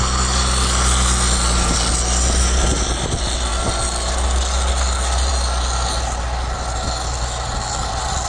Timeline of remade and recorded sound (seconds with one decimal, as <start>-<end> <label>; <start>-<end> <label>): 0.0-8.3 recorded